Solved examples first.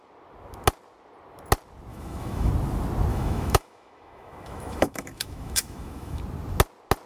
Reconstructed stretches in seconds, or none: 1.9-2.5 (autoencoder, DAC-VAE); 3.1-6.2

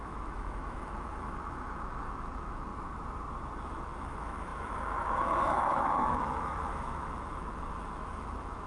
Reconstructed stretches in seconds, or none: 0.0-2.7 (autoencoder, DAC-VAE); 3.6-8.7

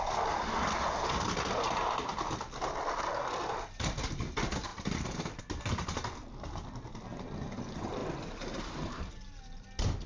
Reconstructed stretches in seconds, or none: none

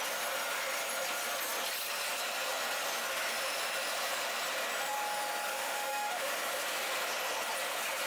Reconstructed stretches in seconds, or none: 5.5-6.3 (autoencoder, DAC-VAE)

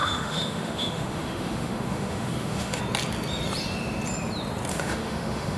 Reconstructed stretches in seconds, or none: 0.0-2.8 (autoencoder, DAC-VAE); 4.7-5.6